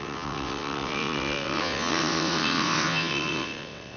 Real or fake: fake